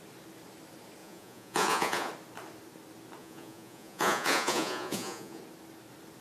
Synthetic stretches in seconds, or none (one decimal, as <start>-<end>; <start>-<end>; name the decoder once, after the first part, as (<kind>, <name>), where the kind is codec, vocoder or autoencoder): 1.0-2.1 (vocoder, Vocos); 3.2-5.4